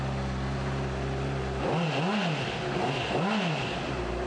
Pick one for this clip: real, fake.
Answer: real